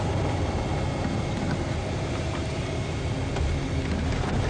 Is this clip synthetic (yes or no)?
no